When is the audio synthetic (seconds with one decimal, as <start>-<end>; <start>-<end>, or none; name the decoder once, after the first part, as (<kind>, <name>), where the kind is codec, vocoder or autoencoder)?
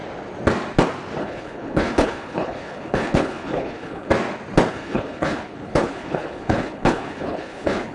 1.2-4.1 (codec, HILCodec); 4.7-7.9